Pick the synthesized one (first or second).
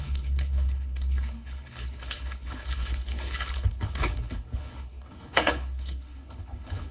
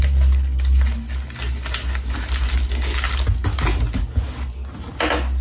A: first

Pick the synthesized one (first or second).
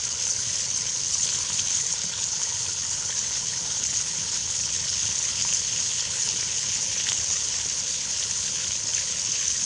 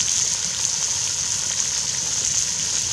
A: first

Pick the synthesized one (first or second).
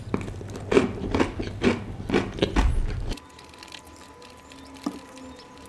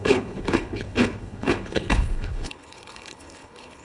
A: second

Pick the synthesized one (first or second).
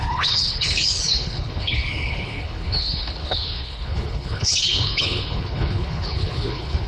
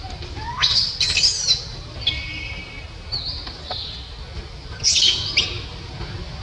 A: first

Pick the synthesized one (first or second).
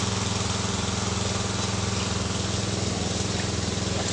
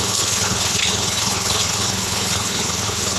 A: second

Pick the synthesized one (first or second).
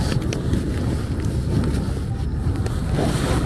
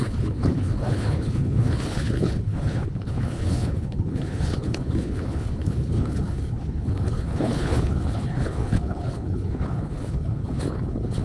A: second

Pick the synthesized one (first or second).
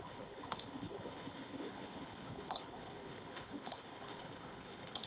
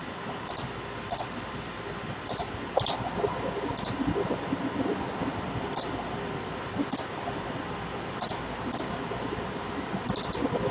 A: first